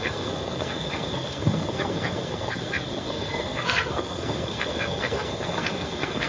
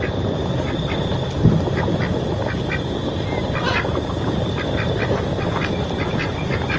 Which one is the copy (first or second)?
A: first